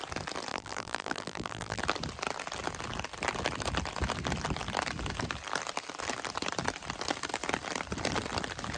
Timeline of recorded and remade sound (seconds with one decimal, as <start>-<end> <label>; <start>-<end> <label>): 0.0-0.5 recorded; 0.5-1.8 remade; 1.8-8.8 recorded